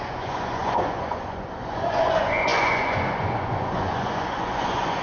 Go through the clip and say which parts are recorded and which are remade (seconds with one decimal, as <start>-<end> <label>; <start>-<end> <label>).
0.0-5.0 remade